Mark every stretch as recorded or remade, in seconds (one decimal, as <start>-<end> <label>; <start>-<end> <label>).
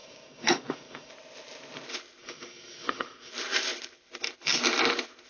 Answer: 0.0-1.1 remade; 1.1-2.2 recorded; 2.2-3.3 remade; 3.3-5.3 recorded